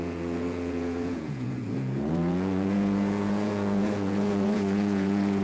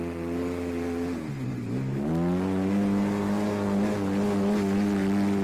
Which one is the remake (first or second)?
first